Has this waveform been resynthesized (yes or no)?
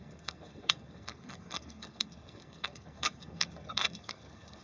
yes